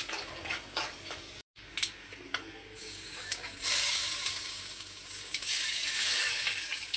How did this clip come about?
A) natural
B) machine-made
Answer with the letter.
B